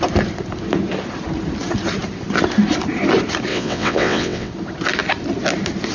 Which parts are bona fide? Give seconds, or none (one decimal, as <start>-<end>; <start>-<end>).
0.0-3.5; 4.5-5.9